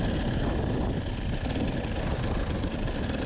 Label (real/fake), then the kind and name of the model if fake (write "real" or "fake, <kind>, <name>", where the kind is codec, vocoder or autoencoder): real